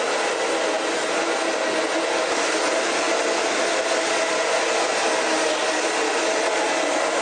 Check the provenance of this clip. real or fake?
real